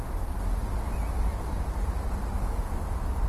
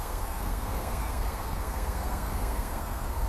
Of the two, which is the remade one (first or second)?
second